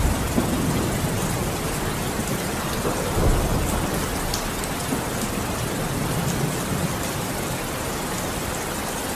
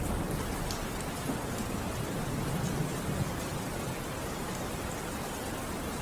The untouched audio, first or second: second